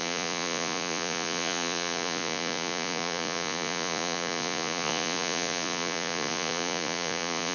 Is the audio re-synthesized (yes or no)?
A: yes